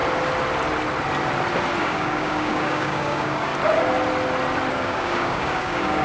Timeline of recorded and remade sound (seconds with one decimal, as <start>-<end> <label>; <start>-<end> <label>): 0.0-1.8 recorded; 1.8-3.5 remade; 3.5-4.7 recorded; 4.7-6.0 remade